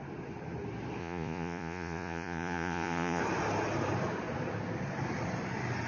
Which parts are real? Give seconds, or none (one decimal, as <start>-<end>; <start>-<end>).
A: 0.0-1.0; 3.2-5.9